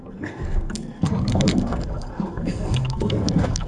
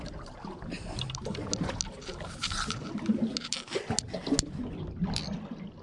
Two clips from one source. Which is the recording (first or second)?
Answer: second